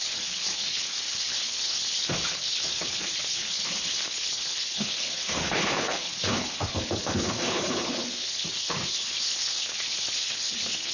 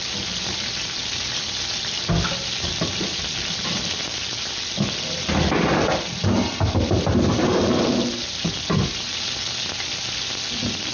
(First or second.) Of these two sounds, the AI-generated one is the first